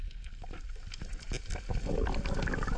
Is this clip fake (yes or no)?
no